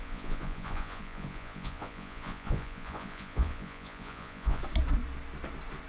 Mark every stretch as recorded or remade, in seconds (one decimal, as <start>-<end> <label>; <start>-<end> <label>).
0.0-4.6 remade; 4.6-5.9 recorded